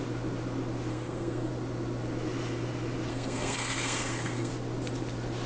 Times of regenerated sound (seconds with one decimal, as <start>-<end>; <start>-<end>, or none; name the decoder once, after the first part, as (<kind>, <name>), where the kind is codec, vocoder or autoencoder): 0.9-1.5 (codec, SNAC); 3.1-4.5